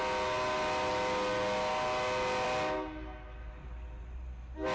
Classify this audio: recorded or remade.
recorded